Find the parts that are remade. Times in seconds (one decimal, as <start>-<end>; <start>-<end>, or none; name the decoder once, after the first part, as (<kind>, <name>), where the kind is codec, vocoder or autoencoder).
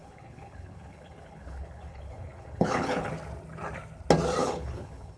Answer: 0.0-3.1 (codec, HILCodec); 4.4-5.2